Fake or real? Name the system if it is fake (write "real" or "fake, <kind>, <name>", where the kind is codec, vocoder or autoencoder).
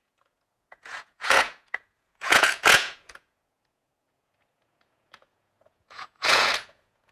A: fake, vocoder, Vocos